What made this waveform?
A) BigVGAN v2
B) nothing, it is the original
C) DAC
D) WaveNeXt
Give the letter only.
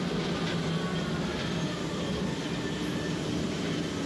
B